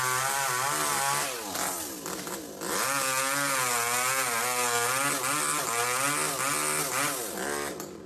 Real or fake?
real